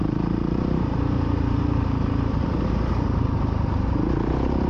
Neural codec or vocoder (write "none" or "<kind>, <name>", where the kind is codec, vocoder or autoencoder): vocoder, BigVGAN v2